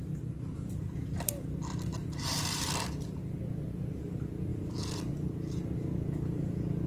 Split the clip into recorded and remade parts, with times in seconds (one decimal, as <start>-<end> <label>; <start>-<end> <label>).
0.0-6.9 recorded